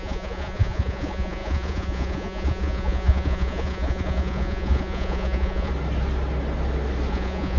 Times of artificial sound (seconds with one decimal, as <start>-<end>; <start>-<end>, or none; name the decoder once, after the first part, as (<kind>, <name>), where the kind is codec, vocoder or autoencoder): 0.0-5.7 (vocoder, Vocos); 7.1-7.6